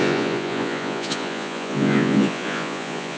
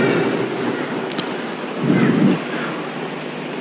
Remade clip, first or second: first